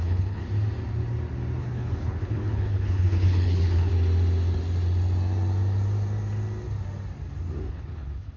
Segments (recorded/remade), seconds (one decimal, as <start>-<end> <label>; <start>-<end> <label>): 0.0-0.4 remade; 0.4-1.6 recorded; 1.6-3.9 remade; 3.9-7.7 recorded; 7.7-8.4 remade